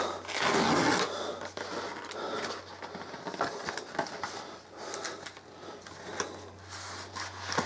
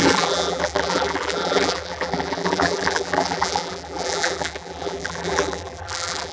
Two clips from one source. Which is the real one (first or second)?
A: first